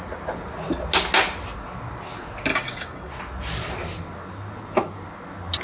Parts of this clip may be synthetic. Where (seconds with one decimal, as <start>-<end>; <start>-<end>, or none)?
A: 2.5-3.1

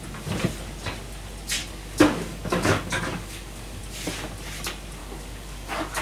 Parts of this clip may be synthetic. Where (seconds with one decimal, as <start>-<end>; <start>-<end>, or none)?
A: 1.6-3.8; 5.0-6.0